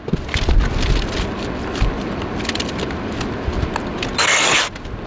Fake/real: real